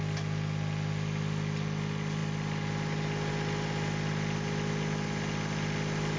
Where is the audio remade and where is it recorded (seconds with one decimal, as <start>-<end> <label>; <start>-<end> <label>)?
0.0-6.2 recorded